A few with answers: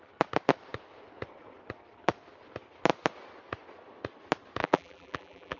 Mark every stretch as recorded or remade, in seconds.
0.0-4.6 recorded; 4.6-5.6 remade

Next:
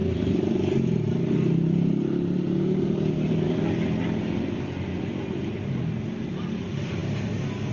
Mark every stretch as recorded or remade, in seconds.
0.0-4.9 recorded; 4.9-5.8 remade; 5.8-7.7 recorded